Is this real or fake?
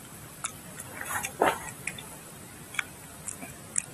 real